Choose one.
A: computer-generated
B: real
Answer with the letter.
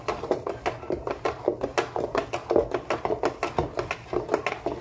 B